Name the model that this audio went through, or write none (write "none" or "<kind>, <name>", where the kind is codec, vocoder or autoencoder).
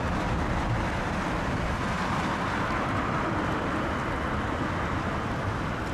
none